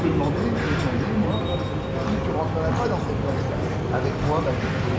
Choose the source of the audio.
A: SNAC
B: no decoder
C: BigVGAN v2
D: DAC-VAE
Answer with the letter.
B